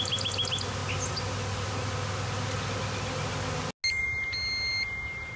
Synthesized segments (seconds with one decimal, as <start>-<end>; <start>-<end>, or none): none